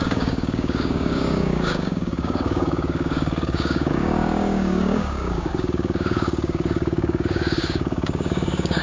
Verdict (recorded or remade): remade